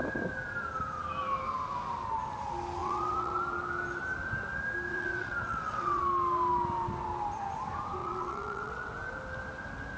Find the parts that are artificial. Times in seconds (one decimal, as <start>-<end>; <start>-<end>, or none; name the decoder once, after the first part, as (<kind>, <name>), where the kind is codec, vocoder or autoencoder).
2.8-3.4 (vocoder, WaveNeXt); 4.9-6.0; 8.0-8.9